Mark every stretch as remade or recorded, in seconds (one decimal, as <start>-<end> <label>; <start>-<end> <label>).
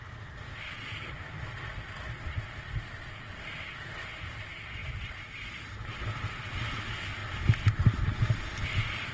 0.0-9.1 recorded